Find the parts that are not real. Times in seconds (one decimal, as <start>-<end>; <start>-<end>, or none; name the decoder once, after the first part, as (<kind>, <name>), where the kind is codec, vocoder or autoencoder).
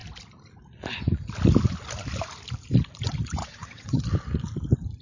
3.4-4.0 (vocoder, WaveNeXt)